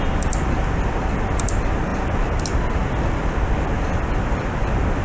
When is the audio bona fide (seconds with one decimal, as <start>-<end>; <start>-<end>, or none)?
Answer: 0.0-5.0